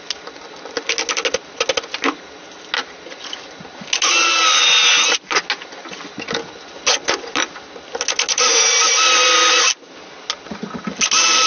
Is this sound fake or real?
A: real